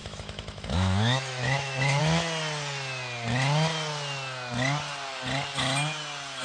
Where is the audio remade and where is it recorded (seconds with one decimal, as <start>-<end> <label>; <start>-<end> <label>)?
0.0-2.0 remade; 2.0-6.4 recorded